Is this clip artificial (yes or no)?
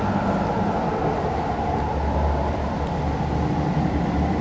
yes